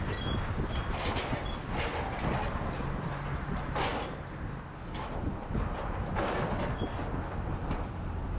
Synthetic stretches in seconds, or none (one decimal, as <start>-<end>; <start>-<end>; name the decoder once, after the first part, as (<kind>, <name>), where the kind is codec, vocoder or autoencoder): none